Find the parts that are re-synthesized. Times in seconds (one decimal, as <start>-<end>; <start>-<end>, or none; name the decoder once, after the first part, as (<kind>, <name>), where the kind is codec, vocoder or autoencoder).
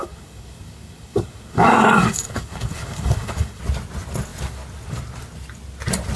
0.0-3.6 (codec, DAC)